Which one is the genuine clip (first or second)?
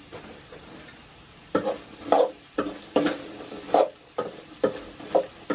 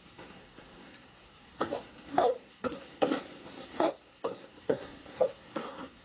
first